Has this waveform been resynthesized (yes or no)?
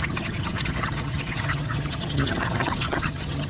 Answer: yes